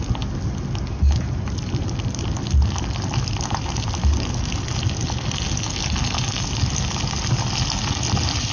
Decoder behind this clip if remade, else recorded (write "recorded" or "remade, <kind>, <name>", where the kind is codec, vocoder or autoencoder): recorded